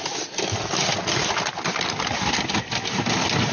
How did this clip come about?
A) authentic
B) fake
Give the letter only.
A